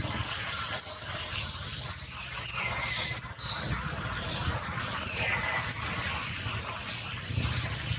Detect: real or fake real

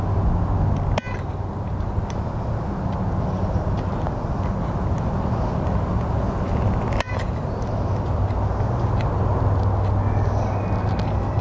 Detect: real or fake real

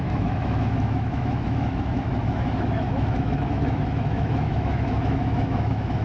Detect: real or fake fake